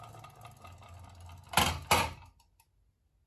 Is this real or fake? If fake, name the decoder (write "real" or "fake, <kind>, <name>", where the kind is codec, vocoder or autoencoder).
real